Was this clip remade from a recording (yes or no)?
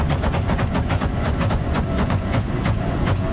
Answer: yes